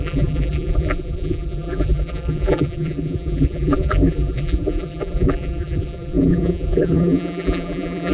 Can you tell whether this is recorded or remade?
remade